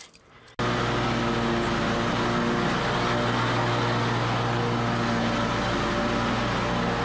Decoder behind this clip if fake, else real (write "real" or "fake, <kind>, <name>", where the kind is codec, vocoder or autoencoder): real